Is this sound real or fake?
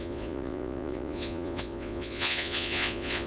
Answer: fake